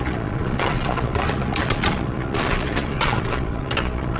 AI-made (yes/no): yes